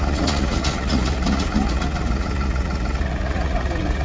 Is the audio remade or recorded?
remade